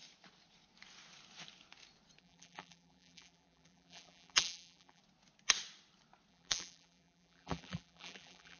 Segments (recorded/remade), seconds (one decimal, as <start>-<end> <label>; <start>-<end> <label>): 0.0-2.2 recorded; 2.2-5.0 remade; 5.0-6.3 recorded; 6.3-8.6 remade